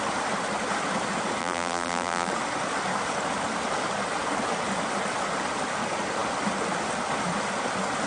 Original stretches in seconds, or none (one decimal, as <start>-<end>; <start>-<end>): 0.0-1.4; 2.3-8.1